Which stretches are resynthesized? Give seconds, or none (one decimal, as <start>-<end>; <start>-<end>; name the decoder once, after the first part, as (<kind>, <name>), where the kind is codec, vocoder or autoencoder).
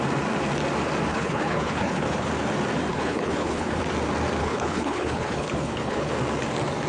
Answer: 1.1-2.3 (codec, HILCodec); 2.9-3.8; 4.4-6.1